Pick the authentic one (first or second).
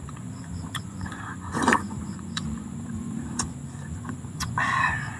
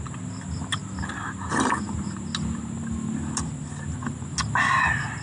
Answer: second